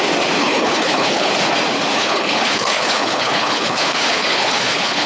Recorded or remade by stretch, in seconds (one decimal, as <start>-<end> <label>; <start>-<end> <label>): 0.0-0.4 recorded; 0.4-1.3 remade; 1.3-1.9 recorded; 1.9-5.1 remade